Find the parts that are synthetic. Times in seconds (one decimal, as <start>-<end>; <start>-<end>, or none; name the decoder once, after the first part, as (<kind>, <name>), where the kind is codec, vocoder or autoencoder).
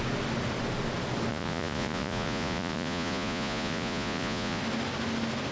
1.3-4.6 (vocoder, Vocos)